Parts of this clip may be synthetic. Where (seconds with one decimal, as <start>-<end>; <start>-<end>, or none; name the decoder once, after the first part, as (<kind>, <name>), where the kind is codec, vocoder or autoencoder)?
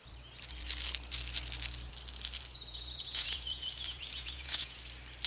2.5-4.8 (vocoder, Vocos)